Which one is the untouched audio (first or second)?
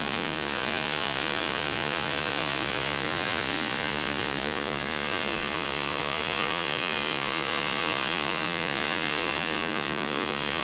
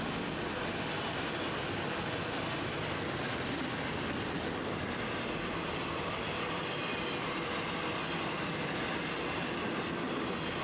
second